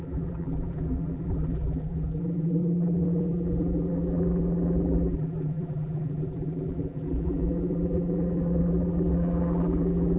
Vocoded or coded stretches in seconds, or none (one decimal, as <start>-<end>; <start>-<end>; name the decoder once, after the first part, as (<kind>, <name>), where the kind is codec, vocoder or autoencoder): 0.0-10.2 (vocoder, BigVGAN v2)